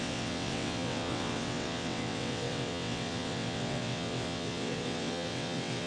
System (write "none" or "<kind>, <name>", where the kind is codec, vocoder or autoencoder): vocoder, WaveNeXt